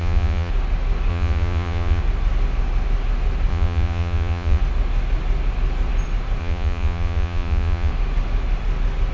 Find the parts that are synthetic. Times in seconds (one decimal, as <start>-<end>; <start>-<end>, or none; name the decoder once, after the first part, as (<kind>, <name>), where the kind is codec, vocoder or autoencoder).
0.0-0.5 (vocoder, Vocos); 1.1-2.0; 3.5-4.6; 6.4-7.9